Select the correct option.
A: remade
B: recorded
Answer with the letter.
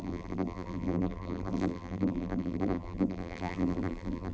A